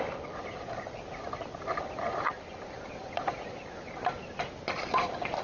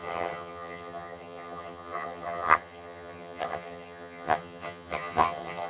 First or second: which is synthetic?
second